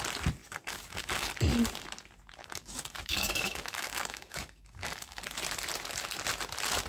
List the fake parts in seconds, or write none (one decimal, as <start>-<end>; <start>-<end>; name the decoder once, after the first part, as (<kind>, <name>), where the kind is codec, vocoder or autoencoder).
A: 0.4-1.3 (codec, DAC); 2.4-5.2